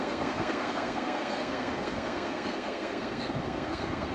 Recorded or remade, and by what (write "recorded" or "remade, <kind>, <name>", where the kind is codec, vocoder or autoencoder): remade, codec, SNAC